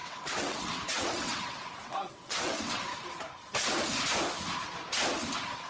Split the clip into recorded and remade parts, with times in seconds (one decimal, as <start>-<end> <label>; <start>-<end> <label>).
0.0-2.9 remade; 2.9-5.7 recorded